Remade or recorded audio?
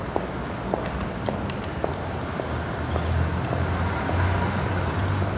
recorded